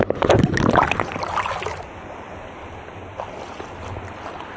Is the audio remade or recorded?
recorded